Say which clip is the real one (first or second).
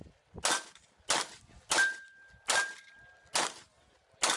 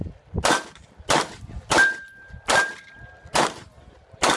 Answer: first